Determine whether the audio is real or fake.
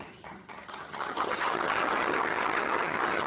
fake